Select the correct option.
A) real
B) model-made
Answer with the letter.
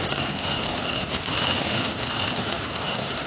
B